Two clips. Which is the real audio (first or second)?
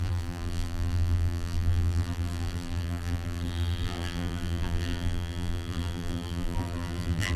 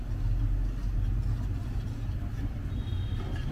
second